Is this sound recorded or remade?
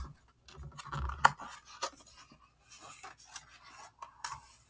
recorded